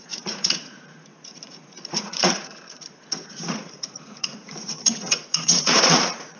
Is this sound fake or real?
fake